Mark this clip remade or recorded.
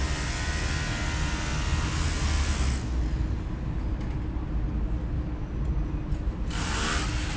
recorded